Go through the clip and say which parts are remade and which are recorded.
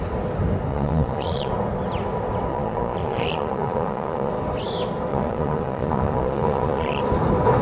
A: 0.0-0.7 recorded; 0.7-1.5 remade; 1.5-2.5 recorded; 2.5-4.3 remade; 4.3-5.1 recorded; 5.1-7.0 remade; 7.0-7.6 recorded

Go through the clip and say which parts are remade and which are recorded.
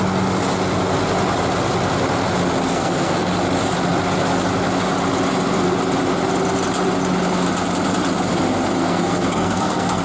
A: 0.0-2.7 recorded; 2.7-3.3 remade; 3.3-8.8 recorded; 8.8-10.0 remade